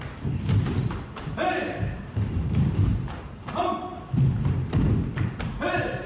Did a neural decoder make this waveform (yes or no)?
yes